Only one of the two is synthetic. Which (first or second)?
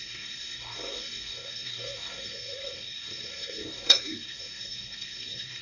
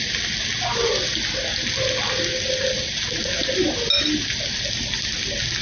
first